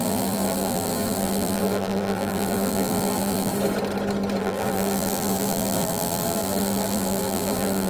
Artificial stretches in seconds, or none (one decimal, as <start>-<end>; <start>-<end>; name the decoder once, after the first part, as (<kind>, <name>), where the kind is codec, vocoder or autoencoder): 0.0-3.5 (vocoder, BigVGAN v2); 4.4-7.9